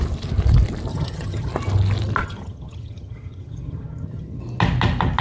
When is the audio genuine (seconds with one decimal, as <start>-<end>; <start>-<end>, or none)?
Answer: 0.0-0.9; 1.5-2.2; 4.4-5.2